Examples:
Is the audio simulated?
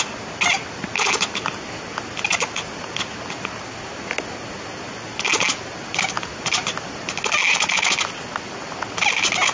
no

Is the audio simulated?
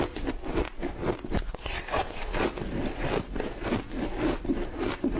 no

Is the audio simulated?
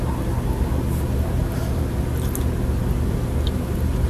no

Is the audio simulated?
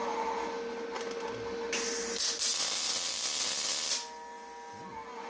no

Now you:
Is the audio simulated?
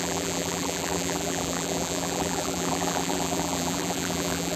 yes